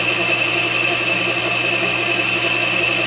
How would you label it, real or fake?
real